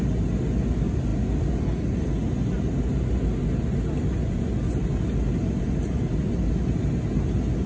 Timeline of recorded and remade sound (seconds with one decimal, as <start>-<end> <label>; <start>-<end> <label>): 0.0-7.7 recorded